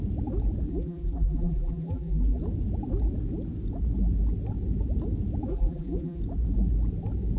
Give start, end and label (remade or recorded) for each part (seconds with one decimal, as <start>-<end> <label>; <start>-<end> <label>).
0.0-0.7 recorded; 0.7-2.4 remade; 2.4-5.5 recorded; 5.5-6.2 remade; 6.2-7.4 recorded